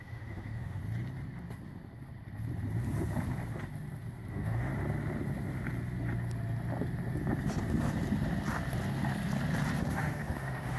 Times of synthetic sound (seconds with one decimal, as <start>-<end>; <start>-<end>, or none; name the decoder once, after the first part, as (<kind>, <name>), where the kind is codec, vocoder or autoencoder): 0.0-0.8 (autoencoder, DAC-VAE); 4.3-4.7; 9.8-10.8